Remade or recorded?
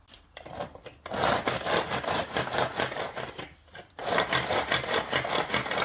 recorded